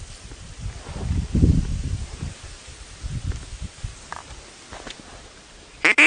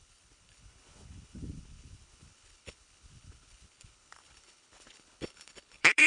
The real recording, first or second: first